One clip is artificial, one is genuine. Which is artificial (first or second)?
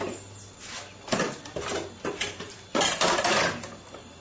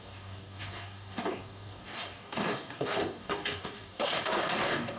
second